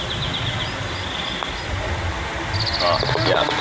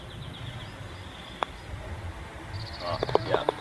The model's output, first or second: second